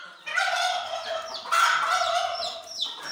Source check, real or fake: fake